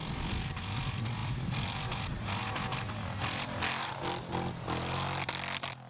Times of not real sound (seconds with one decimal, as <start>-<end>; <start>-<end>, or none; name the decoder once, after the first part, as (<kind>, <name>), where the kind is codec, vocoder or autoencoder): none